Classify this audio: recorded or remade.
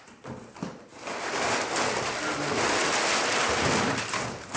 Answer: recorded